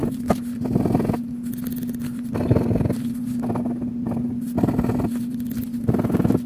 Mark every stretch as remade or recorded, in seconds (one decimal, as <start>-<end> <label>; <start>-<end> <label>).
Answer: 0.0-6.5 recorded

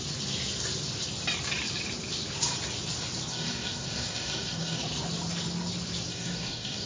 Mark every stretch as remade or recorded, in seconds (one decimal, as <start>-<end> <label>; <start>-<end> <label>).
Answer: 0.0-3.3 recorded; 3.3-4.8 remade; 4.8-6.1 recorded; 6.1-6.9 remade